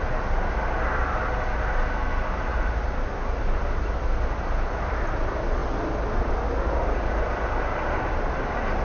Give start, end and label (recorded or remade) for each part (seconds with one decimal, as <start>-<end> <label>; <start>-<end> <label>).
0.0-8.8 recorded